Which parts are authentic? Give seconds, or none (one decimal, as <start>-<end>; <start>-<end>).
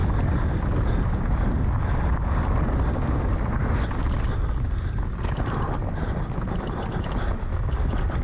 0.0-8.2